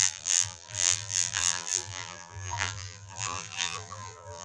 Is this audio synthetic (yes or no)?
yes